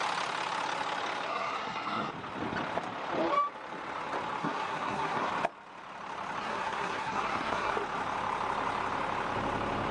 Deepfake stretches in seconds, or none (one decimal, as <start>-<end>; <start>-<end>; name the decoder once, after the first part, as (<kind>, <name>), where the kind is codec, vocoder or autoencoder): 1.3-2.1 (codec, SNAC); 4.4-5.3; 6.4-7.7

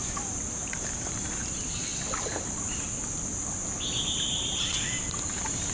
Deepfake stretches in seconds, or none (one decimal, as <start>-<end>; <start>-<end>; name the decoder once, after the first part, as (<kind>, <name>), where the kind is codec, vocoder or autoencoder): 0.0-1.9 (vocoder, BigVGAN v2); 5.3-5.7

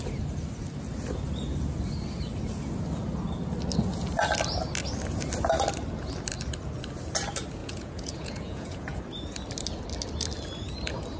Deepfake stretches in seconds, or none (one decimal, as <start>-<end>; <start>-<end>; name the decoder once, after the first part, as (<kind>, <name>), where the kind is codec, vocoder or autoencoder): 7.6-9.0 (vocoder, Vocos)

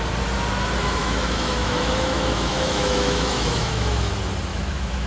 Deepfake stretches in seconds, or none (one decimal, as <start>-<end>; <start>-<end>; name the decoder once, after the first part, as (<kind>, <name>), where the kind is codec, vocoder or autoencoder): 1.0-4.1 (autoencoder, DAC-VAE); 4.5-5.1

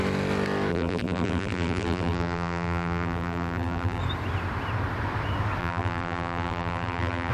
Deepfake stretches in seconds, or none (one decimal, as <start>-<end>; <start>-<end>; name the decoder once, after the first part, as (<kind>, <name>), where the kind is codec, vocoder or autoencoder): 0.7-4.0 (vocoder, BigVGAN v2); 5.6-7.3

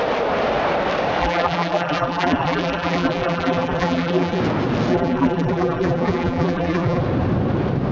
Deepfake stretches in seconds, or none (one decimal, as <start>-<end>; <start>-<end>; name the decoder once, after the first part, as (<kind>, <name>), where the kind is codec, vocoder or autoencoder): 1.2-4.4 (vocoder, BigVGAN v2); 4.9-7.0